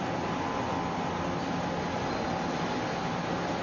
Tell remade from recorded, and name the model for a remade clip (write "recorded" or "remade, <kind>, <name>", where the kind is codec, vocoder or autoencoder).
recorded